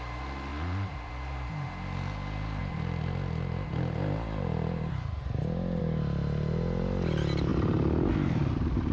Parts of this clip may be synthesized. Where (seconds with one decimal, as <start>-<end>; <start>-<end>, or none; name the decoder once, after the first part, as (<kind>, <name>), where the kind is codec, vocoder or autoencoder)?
0.5-1.1 (vocoder, BigVGAN v2); 2.6-5.8